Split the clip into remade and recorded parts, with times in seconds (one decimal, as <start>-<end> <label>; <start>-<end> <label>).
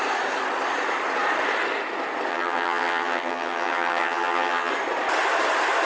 0.0-2.3 recorded; 2.3-4.7 remade; 4.7-5.8 recorded